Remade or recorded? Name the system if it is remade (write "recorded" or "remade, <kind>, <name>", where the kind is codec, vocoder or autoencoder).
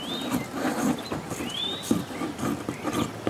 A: recorded